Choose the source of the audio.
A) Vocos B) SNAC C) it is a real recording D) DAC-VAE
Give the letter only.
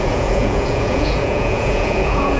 A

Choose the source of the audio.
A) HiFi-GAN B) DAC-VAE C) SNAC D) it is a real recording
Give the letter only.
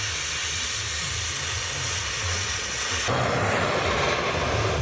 D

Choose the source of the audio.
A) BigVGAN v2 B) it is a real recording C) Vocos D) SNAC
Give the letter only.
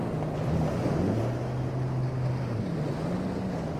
B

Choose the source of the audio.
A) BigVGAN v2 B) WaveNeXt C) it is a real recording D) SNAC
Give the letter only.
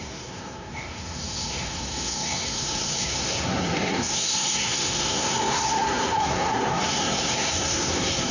D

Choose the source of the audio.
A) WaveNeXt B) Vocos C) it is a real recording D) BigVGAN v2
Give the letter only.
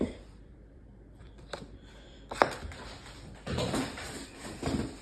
D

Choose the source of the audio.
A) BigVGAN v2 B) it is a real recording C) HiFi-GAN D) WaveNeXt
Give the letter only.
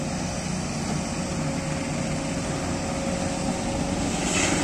B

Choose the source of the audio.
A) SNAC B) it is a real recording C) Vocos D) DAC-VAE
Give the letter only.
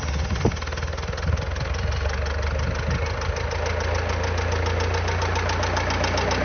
B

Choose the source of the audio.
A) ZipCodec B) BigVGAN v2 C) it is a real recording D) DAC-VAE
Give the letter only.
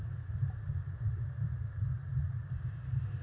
C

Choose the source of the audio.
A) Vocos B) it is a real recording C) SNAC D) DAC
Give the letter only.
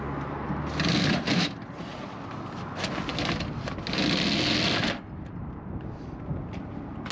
B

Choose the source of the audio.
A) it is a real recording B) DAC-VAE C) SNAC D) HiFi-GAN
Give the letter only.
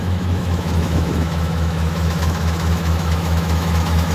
B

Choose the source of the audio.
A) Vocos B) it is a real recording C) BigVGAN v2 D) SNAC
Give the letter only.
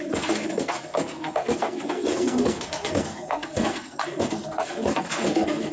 D